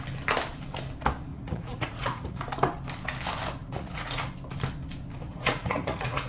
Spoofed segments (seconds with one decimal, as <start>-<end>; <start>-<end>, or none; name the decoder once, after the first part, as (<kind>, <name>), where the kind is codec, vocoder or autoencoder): 1.3-2.4 (vocoder, Vocos); 3.6-4.2; 5.3-6.3